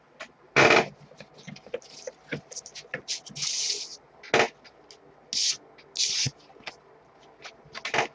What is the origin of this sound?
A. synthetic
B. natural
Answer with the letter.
B